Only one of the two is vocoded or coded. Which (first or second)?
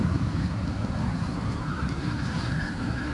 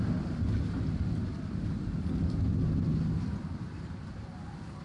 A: first